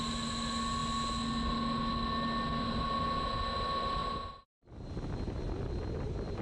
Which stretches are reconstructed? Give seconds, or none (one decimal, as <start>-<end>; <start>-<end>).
none